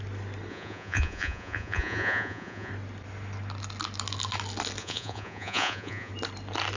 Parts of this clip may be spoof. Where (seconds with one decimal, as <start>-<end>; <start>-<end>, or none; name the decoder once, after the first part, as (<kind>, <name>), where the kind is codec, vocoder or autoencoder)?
0.5-2.7 (vocoder, Vocos); 4.8-6.1